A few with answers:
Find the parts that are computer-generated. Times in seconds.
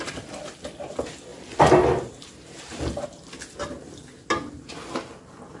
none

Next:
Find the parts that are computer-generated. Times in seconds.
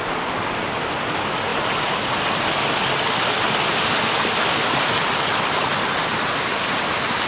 none